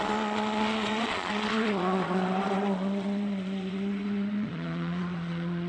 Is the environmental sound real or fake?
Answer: fake